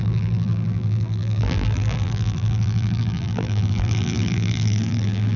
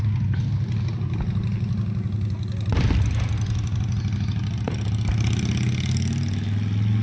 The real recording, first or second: second